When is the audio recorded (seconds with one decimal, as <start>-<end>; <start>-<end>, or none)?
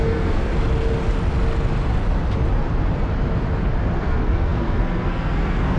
0.5-4.0